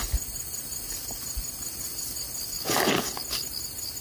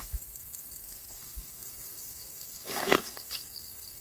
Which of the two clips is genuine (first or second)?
first